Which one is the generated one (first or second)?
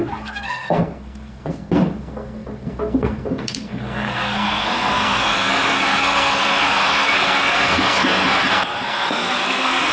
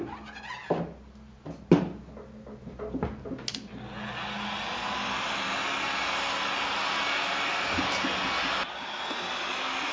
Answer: first